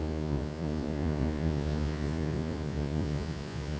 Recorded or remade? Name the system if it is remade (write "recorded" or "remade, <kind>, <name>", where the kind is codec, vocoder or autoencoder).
remade, vocoder, Vocos